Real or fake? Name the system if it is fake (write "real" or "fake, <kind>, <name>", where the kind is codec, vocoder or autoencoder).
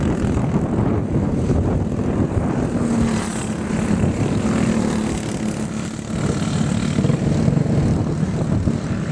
real